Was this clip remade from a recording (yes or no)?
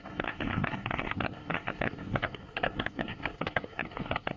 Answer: yes